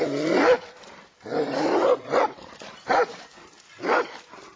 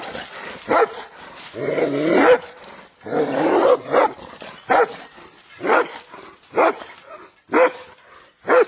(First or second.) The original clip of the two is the second